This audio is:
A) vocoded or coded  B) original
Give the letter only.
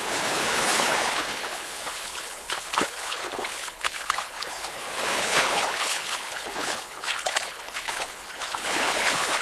A